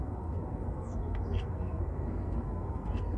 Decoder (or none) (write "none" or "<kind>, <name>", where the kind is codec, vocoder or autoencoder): codec, SNAC